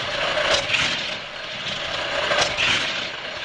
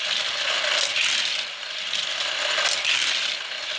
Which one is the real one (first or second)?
second